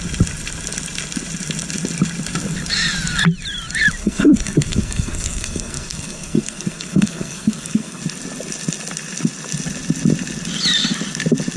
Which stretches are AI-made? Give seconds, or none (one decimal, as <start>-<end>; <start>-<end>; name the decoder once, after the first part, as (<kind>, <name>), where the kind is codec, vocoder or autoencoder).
4.0-8.0 (codec, SNAC)